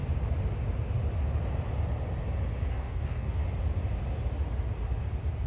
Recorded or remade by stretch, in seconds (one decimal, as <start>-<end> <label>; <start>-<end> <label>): 0.0-2.7 recorded; 2.7-3.4 remade; 3.4-5.5 recorded